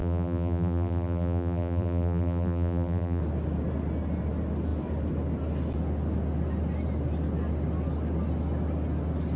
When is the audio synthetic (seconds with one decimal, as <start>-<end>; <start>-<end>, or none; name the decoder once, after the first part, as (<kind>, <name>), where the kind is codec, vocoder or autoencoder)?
0.0-3.2 (vocoder, BigVGAN v2)